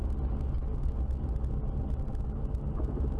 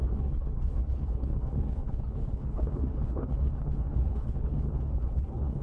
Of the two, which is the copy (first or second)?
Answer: second